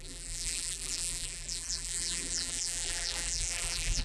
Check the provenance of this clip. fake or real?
fake